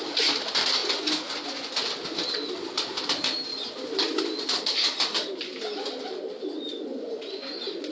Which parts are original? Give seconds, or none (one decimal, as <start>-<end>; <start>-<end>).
0.0-0.8; 1.7-6.7; 7.4-7.9